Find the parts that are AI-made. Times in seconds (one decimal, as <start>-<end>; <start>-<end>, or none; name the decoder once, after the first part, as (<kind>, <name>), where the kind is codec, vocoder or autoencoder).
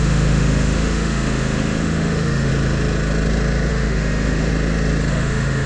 0.0-2.5 (autoencoder, DAC-VAE); 3.7-4.5; 5.1-5.7